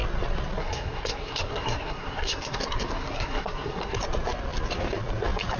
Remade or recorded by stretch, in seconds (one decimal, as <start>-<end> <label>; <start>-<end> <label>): 0.0-0.6 recorded; 0.6-4.0 remade; 4.0-5.6 recorded